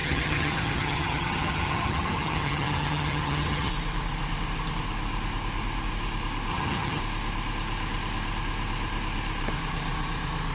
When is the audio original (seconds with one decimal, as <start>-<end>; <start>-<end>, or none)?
3.7-6.5; 7.0-10.5